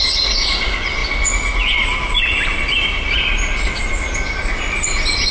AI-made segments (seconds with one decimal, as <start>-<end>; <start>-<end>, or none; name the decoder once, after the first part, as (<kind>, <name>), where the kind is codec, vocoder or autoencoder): none